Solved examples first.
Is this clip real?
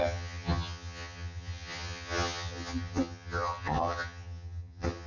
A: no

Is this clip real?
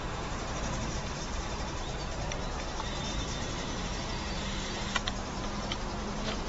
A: no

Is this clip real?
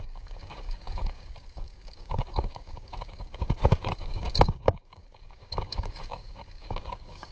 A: no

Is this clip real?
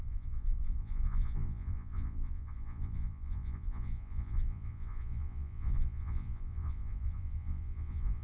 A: no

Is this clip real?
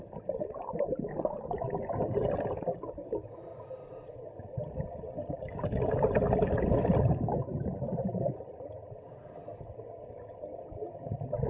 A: yes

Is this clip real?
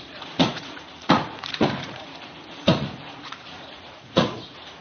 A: no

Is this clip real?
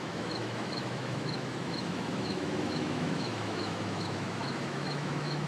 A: no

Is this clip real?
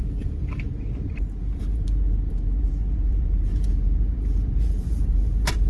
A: no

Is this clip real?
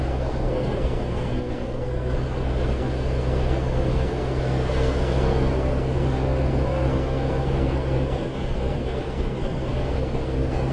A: no